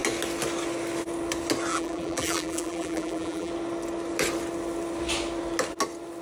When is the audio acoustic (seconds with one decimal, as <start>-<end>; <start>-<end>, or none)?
0.0-1.7; 3.5-6.2